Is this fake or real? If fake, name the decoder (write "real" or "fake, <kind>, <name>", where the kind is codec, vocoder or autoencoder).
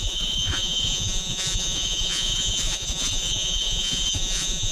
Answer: fake, vocoder, Vocos